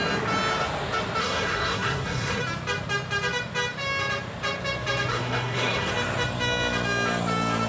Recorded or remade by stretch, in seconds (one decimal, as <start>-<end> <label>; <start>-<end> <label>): 0.0-1.2 recorded; 1.2-2.4 remade; 2.4-5.1 recorded; 5.1-5.9 remade; 5.9-7.7 recorded